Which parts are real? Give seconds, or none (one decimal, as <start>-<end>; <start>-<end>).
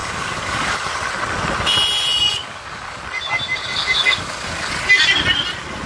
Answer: 0.9-2.4; 3.0-3.6; 4.7-5.9